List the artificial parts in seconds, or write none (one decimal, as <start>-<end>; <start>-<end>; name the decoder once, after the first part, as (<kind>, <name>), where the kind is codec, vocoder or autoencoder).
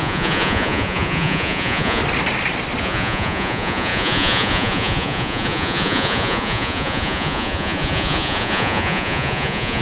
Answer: 0.0-2.0 (vocoder, Vocos); 2.8-9.8